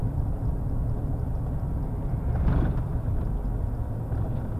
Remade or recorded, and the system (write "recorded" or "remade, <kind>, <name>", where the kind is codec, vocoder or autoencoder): recorded